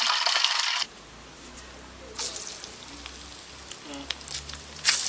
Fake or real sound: real